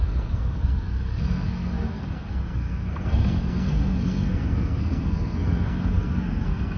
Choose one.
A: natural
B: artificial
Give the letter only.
B